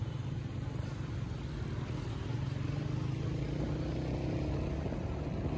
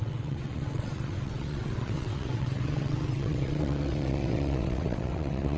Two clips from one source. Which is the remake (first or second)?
second